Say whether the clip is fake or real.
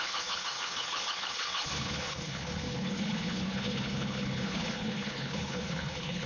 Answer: fake